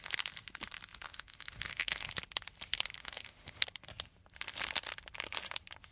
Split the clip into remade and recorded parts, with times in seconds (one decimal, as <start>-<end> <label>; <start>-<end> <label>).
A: 0.0-1.1 recorded; 1.1-2.1 remade; 2.1-3.0 recorded; 3.0-3.6 remade; 3.6-5.9 recorded